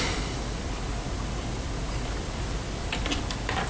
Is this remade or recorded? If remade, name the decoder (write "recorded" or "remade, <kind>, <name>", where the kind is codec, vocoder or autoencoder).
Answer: remade, vocoder, BigVGAN v2